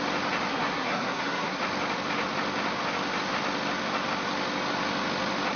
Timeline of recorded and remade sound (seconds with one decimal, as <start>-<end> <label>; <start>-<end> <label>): 0.0-0.5 recorded; 0.5-1.6 remade; 1.6-5.6 recorded